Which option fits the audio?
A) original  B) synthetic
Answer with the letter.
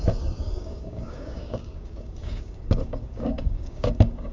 B